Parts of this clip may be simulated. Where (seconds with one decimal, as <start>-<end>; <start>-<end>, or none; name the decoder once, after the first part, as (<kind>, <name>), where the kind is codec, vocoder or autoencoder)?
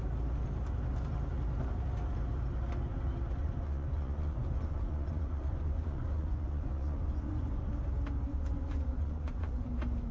3.4-7.7 (vocoder, Vocos); 8.3-9.7